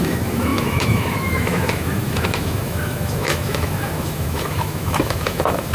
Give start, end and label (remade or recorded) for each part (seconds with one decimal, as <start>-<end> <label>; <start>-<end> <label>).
0.0-5.7 remade